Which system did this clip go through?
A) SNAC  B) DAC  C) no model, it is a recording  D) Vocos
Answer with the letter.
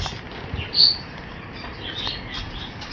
C